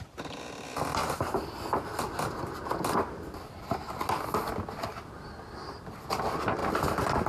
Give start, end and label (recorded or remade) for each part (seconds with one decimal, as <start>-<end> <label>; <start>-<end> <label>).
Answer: 0.0-7.3 recorded